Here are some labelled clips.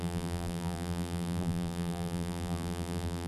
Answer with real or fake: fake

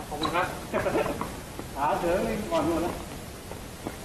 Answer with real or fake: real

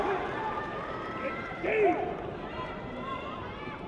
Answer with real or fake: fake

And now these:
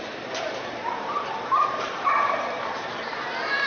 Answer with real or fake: fake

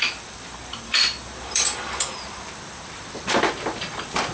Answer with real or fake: fake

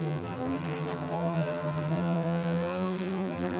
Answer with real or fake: fake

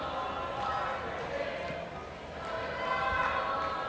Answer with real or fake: real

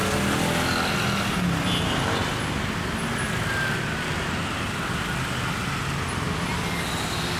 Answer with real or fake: real